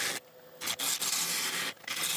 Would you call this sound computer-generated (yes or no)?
no